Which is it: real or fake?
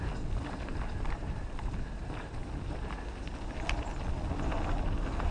real